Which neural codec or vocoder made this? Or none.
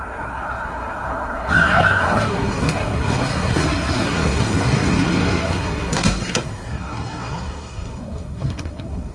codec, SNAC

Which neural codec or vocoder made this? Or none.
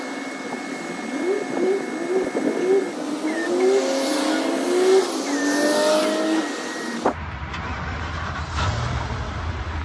none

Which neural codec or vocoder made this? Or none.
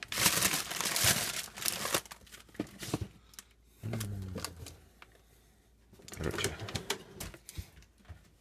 none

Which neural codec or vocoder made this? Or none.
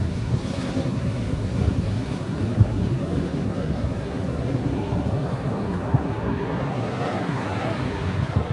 codec, SNAC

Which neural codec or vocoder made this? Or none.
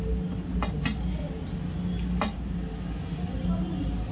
none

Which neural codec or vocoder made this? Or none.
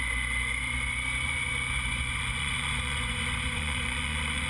vocoder, Vocos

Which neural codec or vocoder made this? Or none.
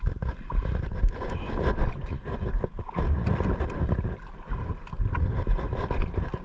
none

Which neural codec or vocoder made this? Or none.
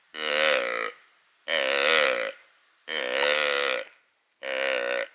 none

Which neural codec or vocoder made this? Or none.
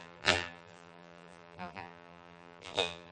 vocoder, BigVGAN v2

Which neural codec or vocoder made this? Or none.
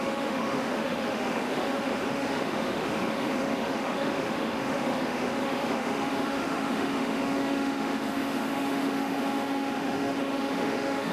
autoencoder, DAC-VAE